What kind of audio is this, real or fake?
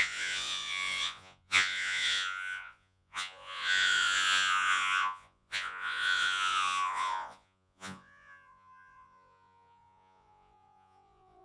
fake